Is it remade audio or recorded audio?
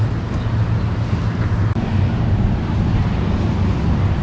recorded